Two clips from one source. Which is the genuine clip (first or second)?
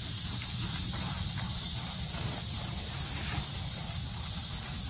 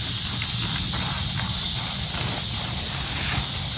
second